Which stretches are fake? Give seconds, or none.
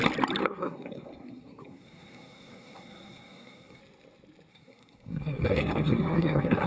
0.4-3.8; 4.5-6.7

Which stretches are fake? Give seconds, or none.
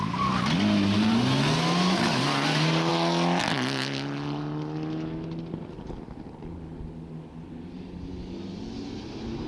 none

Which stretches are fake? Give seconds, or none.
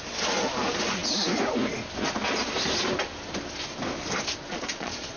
4.5-5.2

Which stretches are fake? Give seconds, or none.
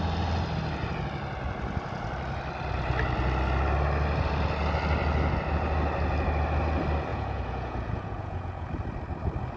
7.1-8.7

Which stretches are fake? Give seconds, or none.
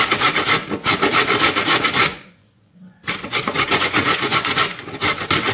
2.1-4.9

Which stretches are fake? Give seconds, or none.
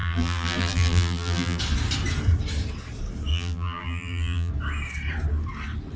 0.0-1.6; 3.3-4.5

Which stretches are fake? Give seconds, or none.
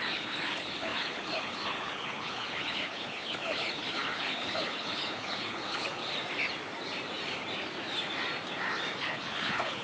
0.0-6.0; 9.0-9.8